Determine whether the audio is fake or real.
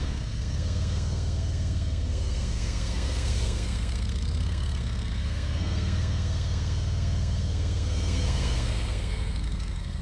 fake